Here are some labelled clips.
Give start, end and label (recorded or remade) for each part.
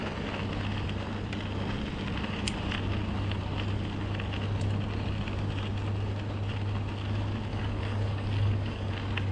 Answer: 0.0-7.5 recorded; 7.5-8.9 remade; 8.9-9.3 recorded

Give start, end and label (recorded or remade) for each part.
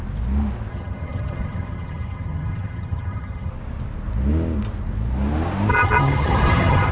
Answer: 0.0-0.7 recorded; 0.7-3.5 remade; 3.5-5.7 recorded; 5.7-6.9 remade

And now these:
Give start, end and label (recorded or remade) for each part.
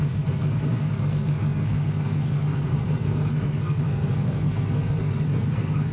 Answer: 0.0-5.9 remade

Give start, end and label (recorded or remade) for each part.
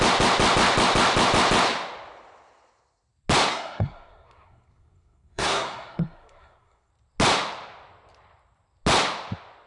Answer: 0.0-3.5 recorded; 3.5-6.9 remade; 6.9-9.7 recorded